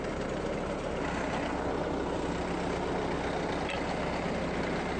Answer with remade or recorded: recorded